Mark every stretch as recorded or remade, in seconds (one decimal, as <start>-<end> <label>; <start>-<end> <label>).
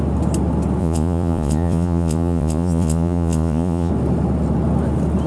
0.0-0.8 recorded; 0.8-3.9 remade; 3.9-5.3 recorded